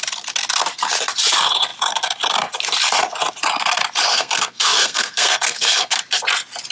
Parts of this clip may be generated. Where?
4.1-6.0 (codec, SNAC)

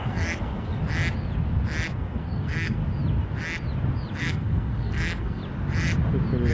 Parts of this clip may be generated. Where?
0.0-0.8 (codec, SNAC); 1.9-2.8; 4.2-5.4

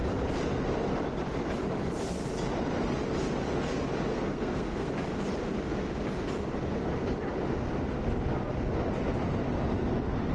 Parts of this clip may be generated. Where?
4.1-4.9 (codec, SNAC)

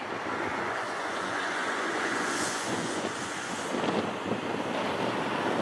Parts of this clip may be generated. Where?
0.5-3.6 (vocoder, Vocos)

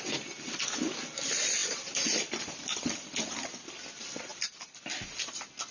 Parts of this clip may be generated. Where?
none